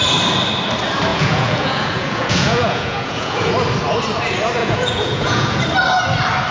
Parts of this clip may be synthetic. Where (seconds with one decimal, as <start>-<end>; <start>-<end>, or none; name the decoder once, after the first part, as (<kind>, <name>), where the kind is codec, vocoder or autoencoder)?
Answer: 1.1-3.5 (vocoder, Vocos); 4.6-5.6